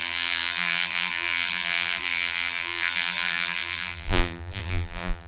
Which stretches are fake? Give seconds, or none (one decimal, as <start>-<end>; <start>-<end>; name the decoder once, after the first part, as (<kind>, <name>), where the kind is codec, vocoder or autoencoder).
0.0-5.3 (vocoder, BigVGAN v2)